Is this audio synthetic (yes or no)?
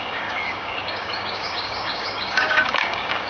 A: yes